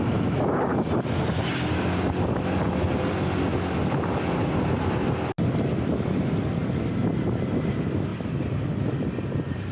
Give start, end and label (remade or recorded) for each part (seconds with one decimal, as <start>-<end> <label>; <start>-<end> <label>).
0.0-9.7 recorded